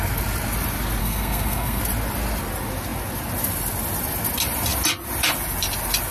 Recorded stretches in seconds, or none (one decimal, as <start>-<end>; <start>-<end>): 0.0-1.0; 1.8-6.1